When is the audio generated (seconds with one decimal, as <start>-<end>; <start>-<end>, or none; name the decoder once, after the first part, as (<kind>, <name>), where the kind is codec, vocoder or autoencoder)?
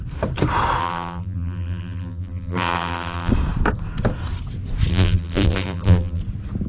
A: 0.8-3.3 (vocoder, BigVGAN v2); 4.9-6.2